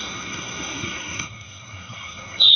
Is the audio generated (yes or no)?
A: yes